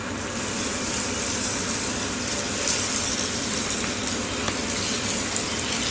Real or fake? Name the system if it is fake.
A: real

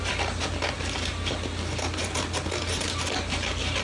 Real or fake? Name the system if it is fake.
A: real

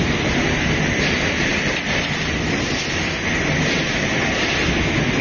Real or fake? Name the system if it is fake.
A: real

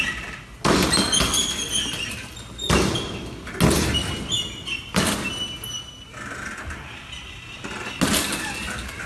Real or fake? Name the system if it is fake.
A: real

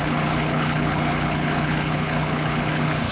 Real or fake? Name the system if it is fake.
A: fake, codec, HILCodec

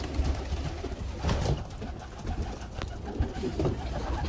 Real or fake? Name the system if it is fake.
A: real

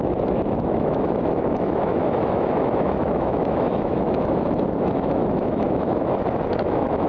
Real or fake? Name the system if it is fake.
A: fake, autoencoder, DAC-VAE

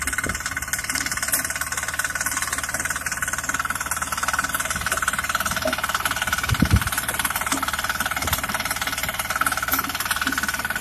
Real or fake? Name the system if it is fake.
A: real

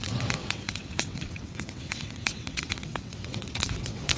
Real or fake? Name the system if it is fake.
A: fake, vocoder, WaveNeXt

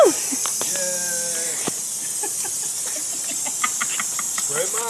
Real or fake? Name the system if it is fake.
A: real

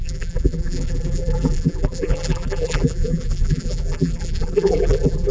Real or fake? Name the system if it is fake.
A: fake, vocoder, BigVGAN v2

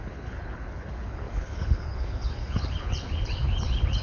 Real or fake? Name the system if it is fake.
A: fake, codec, HILCodec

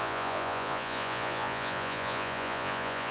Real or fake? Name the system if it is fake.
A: fake, vocoder, Vocos